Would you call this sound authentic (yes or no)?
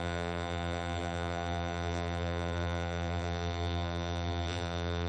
no